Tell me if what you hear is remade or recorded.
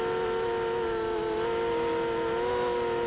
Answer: recorded